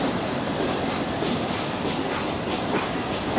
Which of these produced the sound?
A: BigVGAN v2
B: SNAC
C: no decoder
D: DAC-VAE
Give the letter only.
C